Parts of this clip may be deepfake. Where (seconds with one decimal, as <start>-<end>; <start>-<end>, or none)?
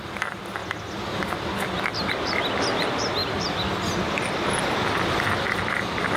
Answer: none